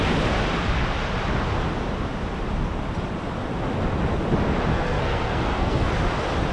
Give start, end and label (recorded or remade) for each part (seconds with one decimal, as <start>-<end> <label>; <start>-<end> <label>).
0.0-4.7 recorded; 4.7-5.9 remade; 5.9-6.5 recorded